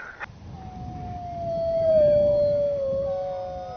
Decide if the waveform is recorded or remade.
recorded